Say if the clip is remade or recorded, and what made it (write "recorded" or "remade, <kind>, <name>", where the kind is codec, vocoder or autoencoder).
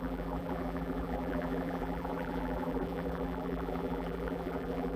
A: remade, vocoder, BigVGAN v2